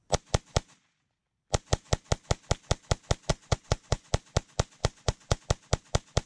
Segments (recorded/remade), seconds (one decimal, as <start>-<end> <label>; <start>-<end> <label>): 0.0-3.3 recorded; 3.3-4.1 remade; 4.1-4.8 recorded; 4.8-5.4 remade; 5.4-6.3 recorded